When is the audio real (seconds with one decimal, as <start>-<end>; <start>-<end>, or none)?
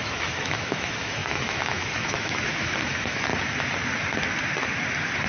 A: 3.3-5.3